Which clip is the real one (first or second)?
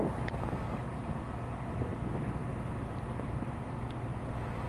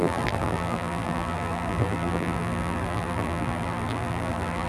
first